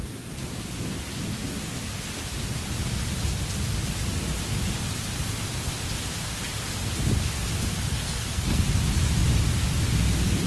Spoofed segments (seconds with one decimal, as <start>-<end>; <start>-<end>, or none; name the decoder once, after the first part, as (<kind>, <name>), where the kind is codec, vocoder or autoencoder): 7.9-8.6 (codec, SNAC)